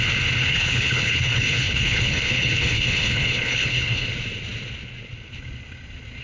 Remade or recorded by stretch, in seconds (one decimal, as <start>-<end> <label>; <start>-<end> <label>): 0.0-0.4 recorded; 0.4-4.1 remade; 4.1-6.2 recorded